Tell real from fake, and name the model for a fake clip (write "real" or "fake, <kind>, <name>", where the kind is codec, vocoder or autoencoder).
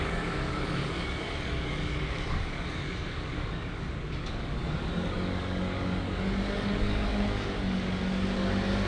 fake, codec, DAC